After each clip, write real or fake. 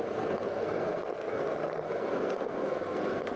fake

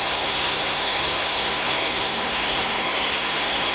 fake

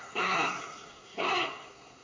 fake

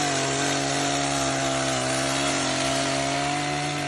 real